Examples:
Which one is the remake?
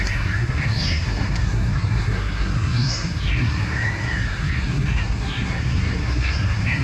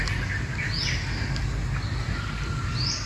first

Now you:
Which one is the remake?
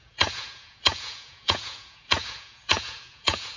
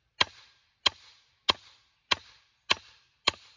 first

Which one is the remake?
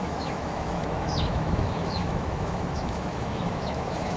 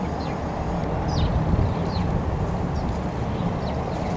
first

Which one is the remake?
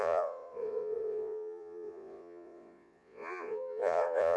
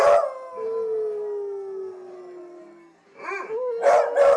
first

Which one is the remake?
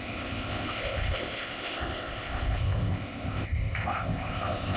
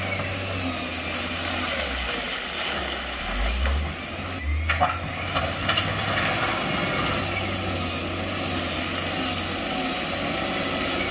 first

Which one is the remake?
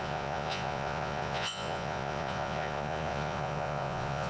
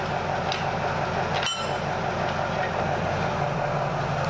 first